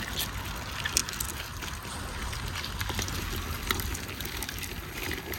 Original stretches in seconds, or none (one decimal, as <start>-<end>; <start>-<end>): 0.0-5.4